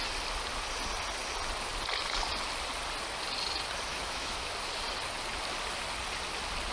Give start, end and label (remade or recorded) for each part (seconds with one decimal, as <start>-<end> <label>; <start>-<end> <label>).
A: 0.0-3.9 recorded; 3.9-4.5 remade; 4.5-6.7 recorded